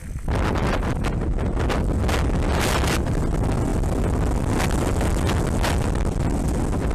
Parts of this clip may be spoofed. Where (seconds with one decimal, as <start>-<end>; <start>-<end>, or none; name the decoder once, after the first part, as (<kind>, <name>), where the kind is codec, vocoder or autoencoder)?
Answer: none

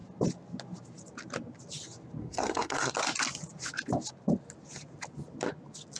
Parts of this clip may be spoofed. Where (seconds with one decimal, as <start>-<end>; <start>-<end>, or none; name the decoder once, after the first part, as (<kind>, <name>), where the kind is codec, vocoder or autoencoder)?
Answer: 2.2-2.9 (codec, SNAC)